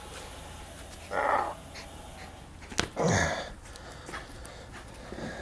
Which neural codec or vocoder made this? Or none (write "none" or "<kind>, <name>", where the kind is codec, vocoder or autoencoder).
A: none